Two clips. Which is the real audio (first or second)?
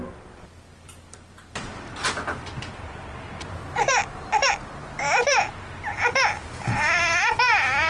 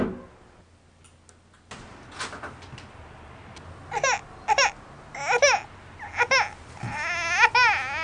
second